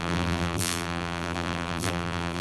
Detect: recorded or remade remade